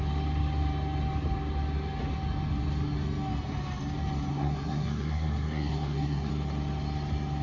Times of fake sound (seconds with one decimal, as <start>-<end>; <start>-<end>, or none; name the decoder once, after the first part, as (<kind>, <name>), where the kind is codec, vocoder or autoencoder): 4.3-6.3 (codec, SNAC)